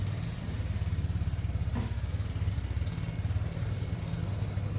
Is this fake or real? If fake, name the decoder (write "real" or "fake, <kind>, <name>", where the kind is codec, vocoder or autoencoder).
real